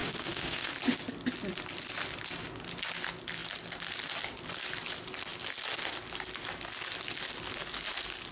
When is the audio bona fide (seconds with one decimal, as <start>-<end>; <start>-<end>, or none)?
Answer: 0.7-8.3